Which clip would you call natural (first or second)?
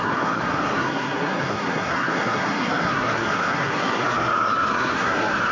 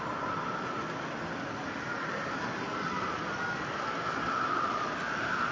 second